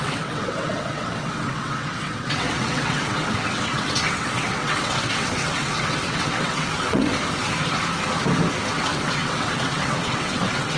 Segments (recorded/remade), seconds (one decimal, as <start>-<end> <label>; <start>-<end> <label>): 0.0-7.1 remade; 7.1-8.7 recorded; 8.7-10.8 remade